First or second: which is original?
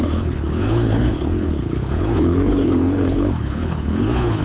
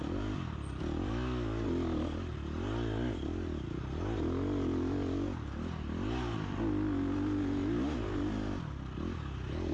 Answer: second